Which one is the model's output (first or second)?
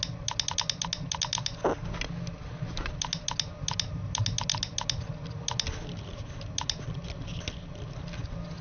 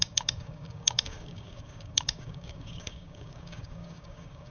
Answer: second